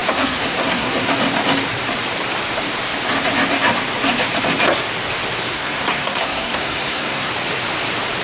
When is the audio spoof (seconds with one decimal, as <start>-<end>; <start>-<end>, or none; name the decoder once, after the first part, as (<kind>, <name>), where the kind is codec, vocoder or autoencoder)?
0.0-1.1 (codec, SNAC); 5.5-7.3